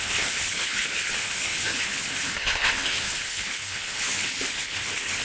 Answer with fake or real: fake